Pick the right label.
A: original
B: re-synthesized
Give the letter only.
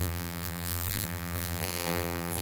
B